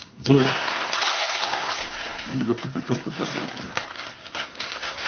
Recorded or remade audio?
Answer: remade